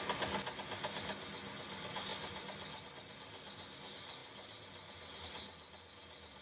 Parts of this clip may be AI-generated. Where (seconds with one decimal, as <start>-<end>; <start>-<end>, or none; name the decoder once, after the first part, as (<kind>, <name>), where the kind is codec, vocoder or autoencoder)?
none

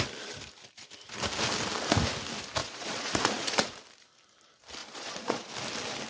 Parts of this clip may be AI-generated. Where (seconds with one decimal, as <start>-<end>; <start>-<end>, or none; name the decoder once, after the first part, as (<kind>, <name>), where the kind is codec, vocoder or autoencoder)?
2.6-3.6 (vocoder, Vocos); 4.8-5.5

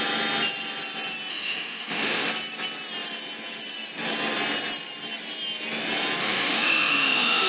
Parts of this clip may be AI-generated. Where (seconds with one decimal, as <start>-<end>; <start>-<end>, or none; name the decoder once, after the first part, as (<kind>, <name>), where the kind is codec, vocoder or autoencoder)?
1.3-2.3 (autoencoder, DAC-VAE); 6.2-7.5

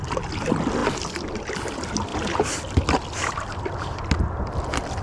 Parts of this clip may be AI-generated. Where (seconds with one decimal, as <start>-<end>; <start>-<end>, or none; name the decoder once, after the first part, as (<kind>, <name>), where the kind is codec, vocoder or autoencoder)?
none

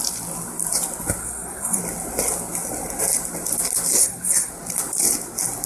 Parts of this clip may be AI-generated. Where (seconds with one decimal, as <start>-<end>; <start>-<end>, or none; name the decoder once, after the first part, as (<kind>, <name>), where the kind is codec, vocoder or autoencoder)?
1.2-1.8 (codec, SNAC); 4.0-4.5

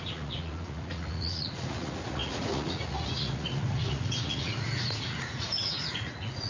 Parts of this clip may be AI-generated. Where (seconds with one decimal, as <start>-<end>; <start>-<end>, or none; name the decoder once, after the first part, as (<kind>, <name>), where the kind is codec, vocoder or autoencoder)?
0.0-6.5 (vocoder, Vocos)